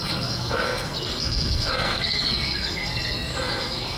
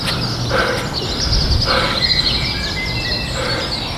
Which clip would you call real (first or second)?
second